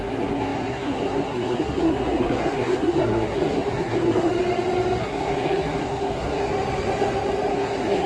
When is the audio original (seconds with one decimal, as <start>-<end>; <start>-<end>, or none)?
4.3-5.0; 6.5-7.5